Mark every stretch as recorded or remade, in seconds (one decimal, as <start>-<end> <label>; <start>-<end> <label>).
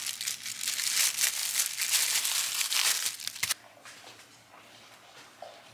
0.0-5.7 recorded